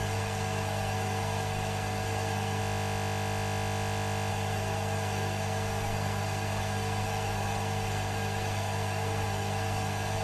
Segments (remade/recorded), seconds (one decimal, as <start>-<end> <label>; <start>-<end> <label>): 0.0-2.6 remade; 2.6-4.3 recorded; 4.3-10.2 remade